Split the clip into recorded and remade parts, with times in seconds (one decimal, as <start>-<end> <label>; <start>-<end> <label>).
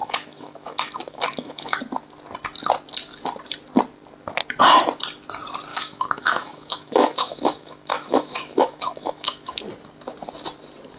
0.0-1.8 remade; 1.8-5.7 recorded; 5.7-9.6 remade; 9.6-11.0 recorded